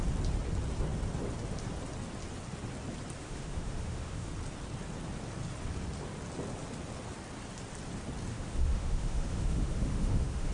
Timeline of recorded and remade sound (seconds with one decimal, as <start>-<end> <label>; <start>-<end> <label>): 0.0-3.2 recorded; 3.2-4.3 remade; 4.3-8.3 recorded; 8.3-10.5 remade